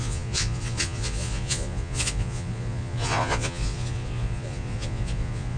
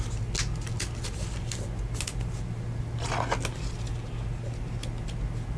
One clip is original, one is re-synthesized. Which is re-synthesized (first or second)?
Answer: first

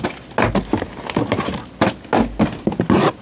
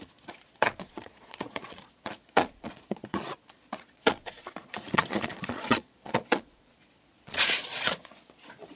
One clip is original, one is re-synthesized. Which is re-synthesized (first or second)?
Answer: second